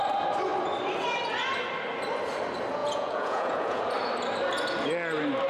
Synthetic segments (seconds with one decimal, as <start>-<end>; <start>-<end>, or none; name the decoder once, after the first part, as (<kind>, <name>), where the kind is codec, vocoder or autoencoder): 2.8-3.8 (vocoder, Vocos)